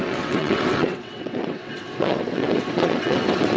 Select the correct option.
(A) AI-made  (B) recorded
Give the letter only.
A